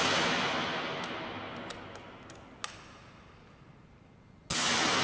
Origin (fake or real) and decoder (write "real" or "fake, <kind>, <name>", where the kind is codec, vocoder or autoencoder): real